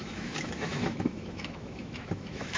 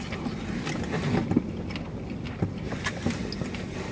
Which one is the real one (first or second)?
second